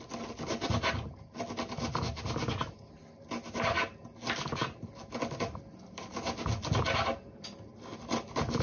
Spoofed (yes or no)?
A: no